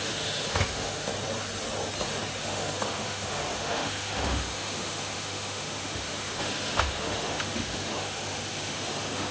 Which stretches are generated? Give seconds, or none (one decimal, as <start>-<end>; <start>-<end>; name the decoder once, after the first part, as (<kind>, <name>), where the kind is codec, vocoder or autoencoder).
0.0-1.1 (autoencoder, DAC-VAE); 2.4-9.3